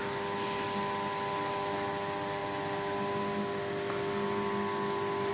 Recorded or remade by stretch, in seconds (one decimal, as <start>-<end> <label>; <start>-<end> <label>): 0.0-5.3 recorded